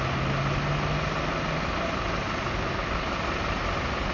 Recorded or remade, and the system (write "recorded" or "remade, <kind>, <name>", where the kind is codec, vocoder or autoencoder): recorded